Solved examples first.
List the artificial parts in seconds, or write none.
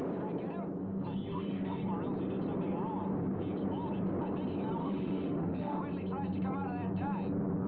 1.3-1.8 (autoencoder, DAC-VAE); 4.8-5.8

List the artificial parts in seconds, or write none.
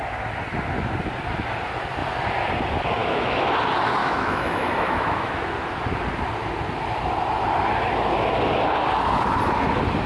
3.0-3.5 (autoencoder, DAC-VAE); 4.0-5.4